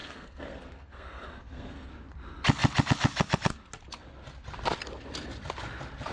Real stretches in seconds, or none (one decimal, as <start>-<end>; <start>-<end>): 1.9-6.1